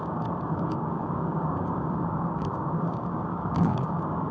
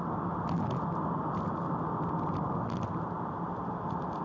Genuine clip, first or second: second